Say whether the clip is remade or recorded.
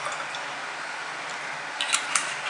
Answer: recorded